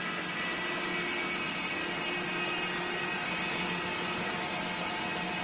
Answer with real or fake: real